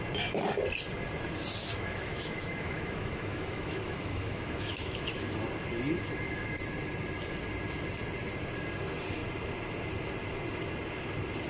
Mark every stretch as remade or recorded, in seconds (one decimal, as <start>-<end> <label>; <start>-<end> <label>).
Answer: 0.0-1.6 recorded; 1.6-5.4 remade; 5.4-11.5 recorded